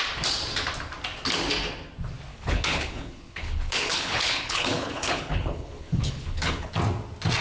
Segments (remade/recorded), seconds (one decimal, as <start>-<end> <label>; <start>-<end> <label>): 0.0-2.3 recorded; 2.3-6.7 remade; 6.7-7.4 recorded